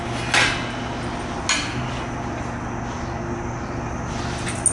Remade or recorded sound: recorded